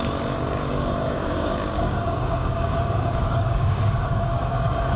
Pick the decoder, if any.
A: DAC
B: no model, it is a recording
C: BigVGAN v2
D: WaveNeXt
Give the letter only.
A